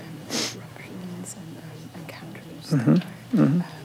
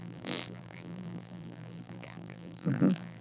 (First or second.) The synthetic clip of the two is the second